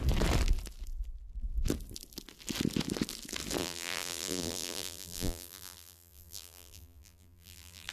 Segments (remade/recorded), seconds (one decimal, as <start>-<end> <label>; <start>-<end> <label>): 0.0-3.6 recorded; 3.6-7.9 remade